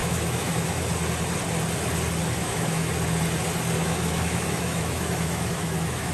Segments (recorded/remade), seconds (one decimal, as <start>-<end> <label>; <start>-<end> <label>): 0.0-0.8 remade; 0.8-2.4 recorded; 2.4-2.9 remade; 2.9-3.8 recorded; 3.8-6.1 remade